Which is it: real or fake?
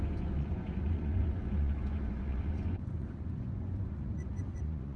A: fake